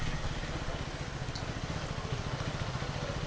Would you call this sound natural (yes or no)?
yes